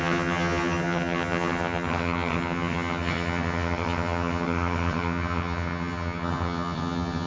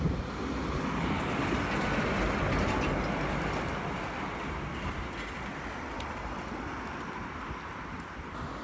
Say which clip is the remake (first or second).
first